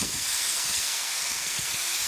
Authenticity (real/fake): fake